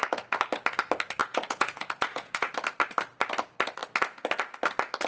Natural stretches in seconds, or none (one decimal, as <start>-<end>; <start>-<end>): 0.0-1.2; 2.5-5.1